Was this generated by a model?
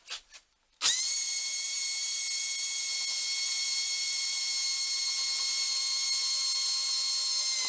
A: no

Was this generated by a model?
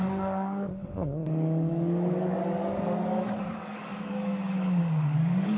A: yes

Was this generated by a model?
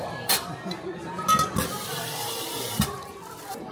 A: no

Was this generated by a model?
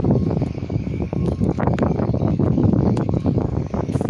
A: yes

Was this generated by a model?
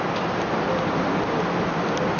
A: no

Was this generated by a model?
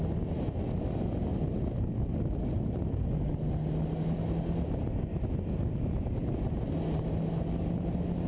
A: no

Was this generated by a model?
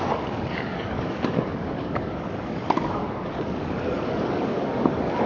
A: yes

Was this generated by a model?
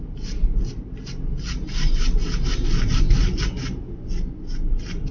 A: no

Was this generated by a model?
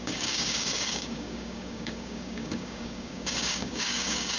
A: yes